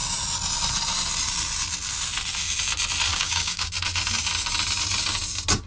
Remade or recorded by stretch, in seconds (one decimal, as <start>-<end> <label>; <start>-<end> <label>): 0.0-3.1 recorded; 3.1-3.7 remade; 3.7-5.7 recorded